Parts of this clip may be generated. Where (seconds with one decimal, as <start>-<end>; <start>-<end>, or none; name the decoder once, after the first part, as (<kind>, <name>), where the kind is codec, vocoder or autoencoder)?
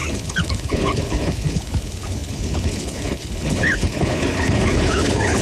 0.0-5.4 (codec, HILCodec)